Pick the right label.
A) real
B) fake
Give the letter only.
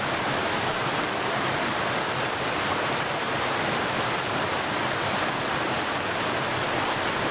A